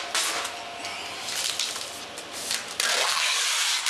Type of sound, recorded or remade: recorded